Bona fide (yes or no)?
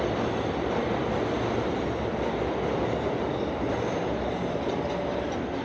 yes